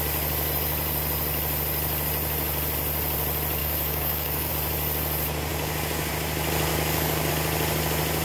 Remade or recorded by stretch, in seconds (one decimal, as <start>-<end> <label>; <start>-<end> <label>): 0.0-3.6 recorded; 3.6-4.5 remade; 4.5-5.5 recorded; 5.5-6.1 remade; 6.1-6.7 recorded; 6.7-7.3 remade; 7.3-8.2 recorded